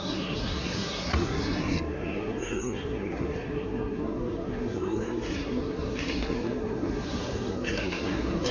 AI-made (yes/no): yes